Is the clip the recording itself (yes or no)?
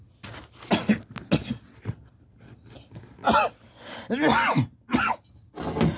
yes